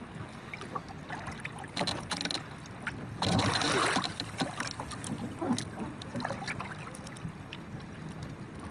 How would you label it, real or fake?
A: real